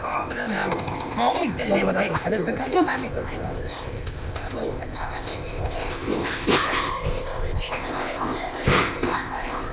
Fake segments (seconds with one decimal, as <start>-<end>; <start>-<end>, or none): 0.0-9.7